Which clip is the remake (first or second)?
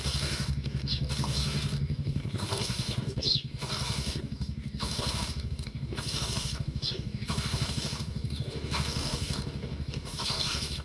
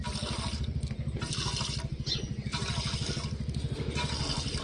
first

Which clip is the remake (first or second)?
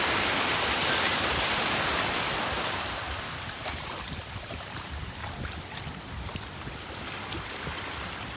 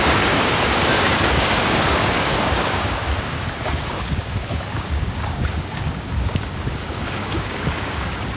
second